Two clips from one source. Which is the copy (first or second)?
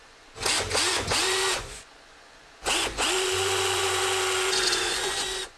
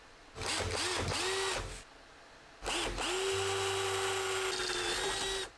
first